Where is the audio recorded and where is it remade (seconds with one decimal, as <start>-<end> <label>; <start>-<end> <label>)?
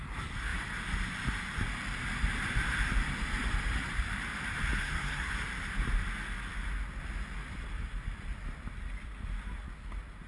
0.0-4.8 recorded; 4.8-5.3 remade; 5.3-10.3 recorded